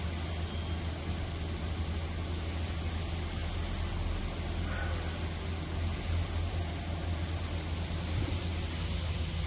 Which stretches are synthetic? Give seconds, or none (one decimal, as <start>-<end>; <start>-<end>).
none